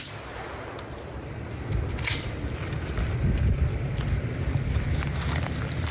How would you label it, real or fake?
real